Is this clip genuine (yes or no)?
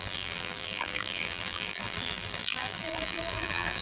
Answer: no